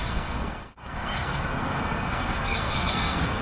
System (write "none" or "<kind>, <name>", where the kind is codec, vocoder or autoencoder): codec, SNAC